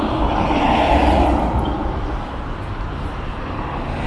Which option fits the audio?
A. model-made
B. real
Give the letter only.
B